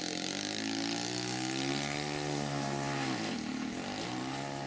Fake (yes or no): no